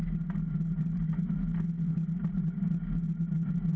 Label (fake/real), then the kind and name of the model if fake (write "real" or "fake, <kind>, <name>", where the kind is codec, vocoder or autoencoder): real